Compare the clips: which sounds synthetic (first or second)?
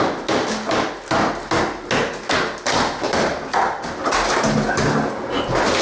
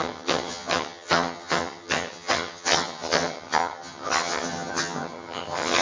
second